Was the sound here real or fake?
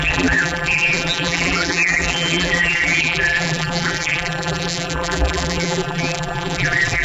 fake